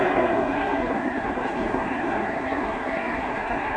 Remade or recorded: remade